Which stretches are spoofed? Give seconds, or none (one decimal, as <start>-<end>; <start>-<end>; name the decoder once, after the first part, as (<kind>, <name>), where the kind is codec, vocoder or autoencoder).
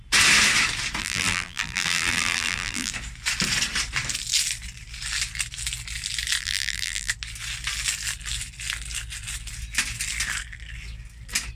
1.0-2.9 (vocoder, BigVGAN v2); 6.4-7.1